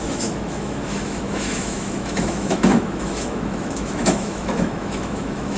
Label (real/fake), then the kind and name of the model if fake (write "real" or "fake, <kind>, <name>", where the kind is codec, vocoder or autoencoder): fake, autoencoder, DAC-VAE